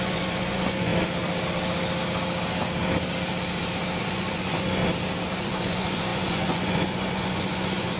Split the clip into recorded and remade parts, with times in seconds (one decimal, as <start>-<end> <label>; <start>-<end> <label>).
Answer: 0.0-0.9 remade; 0.9-4.0 recorded; 4.0-4.8 remade; 4.8-5.3 recorded; 5.3-8.0 remade